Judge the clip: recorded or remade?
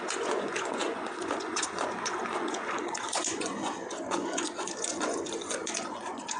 remade